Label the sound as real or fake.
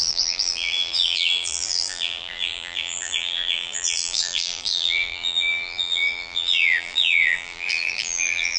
fake